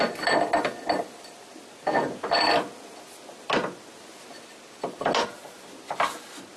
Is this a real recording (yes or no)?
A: yes